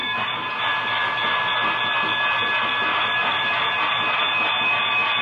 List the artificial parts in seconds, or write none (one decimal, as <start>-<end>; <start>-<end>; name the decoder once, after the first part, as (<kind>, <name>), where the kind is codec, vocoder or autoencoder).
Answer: 0.0-0.6 (vocoder, BigVGAN v2); 2.9-3.6

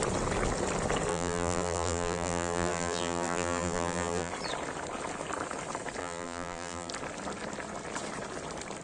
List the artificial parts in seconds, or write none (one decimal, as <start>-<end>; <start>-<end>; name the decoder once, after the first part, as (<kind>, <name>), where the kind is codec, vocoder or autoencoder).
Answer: 1.1-4.3 (vocoder, BigVGAN v2); 6.0-6.9

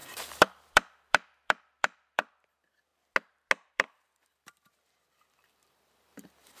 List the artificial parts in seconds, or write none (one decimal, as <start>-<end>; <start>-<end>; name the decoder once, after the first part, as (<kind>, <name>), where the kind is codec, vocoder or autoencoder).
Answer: 0.0-2.9 (vocoder, BigVGAN v2); 3.7-6.6

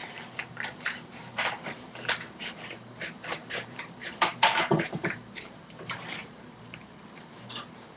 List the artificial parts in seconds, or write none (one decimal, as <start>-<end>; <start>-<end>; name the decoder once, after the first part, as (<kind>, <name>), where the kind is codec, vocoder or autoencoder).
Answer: 0.0-8.0 (vocoder, BigVGAN v2)